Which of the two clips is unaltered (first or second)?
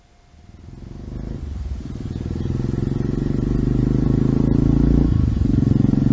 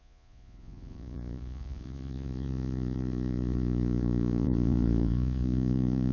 first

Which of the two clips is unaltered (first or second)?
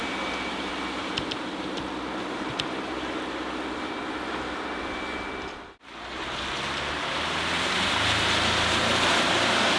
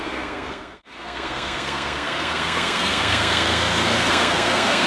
first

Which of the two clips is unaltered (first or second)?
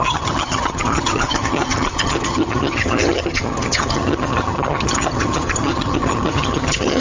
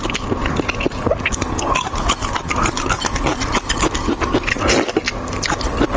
second